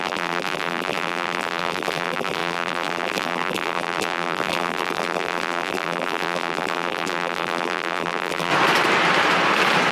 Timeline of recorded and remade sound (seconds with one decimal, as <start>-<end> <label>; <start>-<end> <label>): 0.0-8.5 remade; 8.5-9.9 recorded